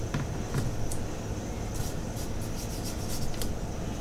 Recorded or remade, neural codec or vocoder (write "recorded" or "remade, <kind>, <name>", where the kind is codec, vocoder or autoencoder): recorded